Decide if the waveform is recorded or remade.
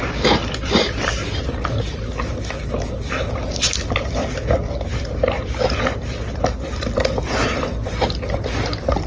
remade